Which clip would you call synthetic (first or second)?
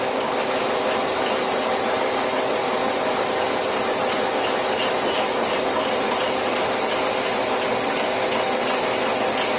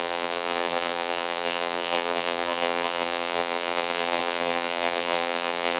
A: second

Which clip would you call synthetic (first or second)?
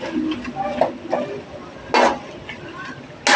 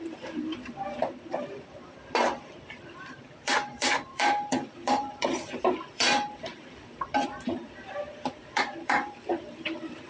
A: second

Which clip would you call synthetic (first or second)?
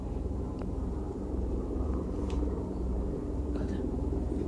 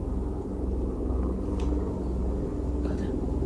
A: first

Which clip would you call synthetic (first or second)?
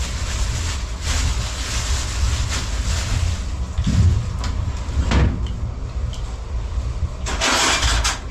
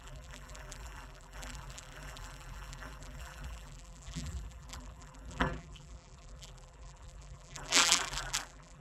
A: second